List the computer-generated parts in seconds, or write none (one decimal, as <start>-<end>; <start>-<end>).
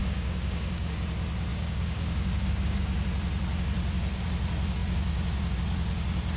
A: 0.0-0.9; 1.5-2.8